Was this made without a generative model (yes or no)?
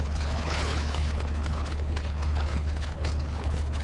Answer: no